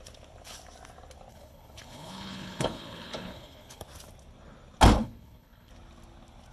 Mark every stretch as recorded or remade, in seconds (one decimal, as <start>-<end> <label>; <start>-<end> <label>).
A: 0.0-1.3 recorded; 1.3-3.8 remade; 3.8-5.0 recorded; 5.0-5.7 remade; 5.7-6.5 recorded